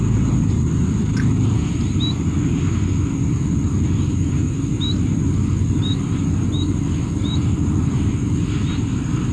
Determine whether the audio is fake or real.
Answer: real